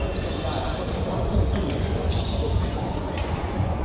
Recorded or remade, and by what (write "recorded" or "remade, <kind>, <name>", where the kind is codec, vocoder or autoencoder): remade, vocoder, Vocos